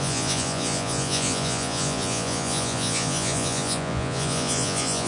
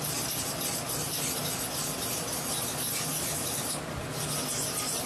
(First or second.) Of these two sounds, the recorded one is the second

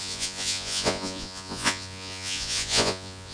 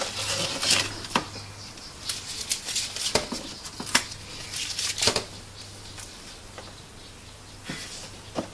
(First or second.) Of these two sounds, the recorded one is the second